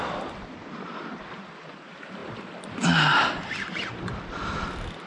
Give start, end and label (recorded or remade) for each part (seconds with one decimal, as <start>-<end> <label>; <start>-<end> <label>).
0.0-5.1 recorded